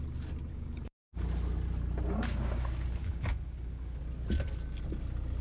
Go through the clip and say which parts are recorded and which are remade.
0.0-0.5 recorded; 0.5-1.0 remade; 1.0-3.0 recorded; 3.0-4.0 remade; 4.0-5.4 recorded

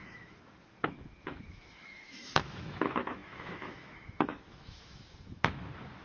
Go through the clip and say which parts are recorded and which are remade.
0.0-6.0 remade

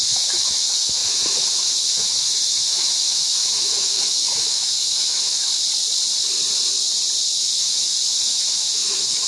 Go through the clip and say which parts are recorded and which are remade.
0.0-5.5 remade; 5.5-7.3 recorded; 7.3-9.3 remade

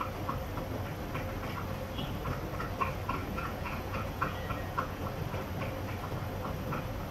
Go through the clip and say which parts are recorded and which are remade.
0.0-3.2 recorded; 3.2-5.1 remade; 5.1-7.1 recorded

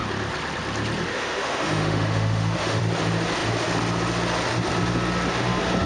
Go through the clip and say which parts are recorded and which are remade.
0.0-1.1 recorded; 1.1-2.8 remade; 2.8-5.9 recorded